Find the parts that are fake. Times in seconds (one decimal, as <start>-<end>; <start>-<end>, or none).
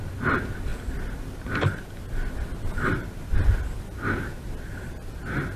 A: none